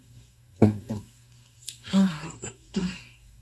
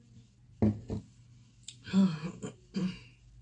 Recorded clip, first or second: second